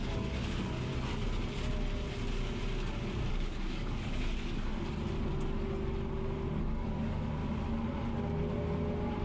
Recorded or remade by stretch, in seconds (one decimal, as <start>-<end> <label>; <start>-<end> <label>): 0.0-0.9 remade; 0.9-3.3 recorded; 3.3-4.7 remade; 4.7-6.6 recorded; 6.6-7.4 remade; 7.4-9.2 recorded